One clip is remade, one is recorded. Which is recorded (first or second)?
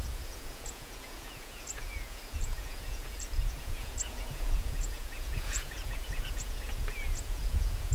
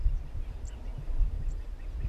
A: second